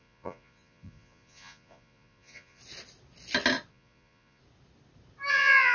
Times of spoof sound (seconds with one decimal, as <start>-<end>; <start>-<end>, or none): 0.0-2.6; 3.7-4.4; 5.3-5.7